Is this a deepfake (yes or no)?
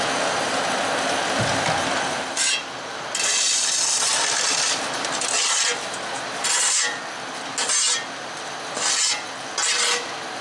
no